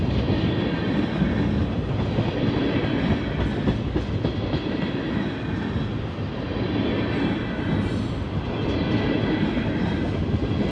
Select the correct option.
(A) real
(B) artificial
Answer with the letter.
A